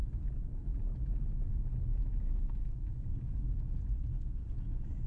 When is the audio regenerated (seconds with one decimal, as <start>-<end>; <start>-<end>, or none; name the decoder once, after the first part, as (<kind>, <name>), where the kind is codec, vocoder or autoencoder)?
1.9-5.1 (vocoder, Vocos)

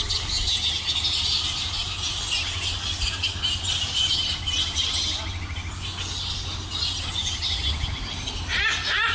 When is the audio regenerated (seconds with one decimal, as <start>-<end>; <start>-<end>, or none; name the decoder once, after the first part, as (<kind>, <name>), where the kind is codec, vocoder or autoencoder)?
none

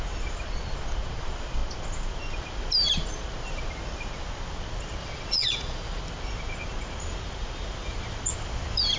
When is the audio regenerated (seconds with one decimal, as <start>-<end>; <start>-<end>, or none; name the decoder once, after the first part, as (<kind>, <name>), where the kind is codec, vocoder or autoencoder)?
5.0-6.0 (vocoder, Vocos)

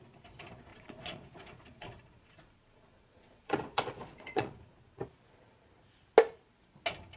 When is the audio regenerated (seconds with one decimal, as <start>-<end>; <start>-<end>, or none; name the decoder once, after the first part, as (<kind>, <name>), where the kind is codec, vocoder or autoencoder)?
0.7-5.0 (vocoder, Vocos)